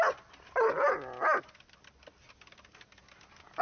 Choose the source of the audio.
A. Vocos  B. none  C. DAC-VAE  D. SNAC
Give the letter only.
B